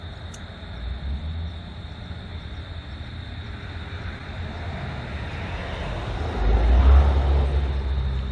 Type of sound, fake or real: real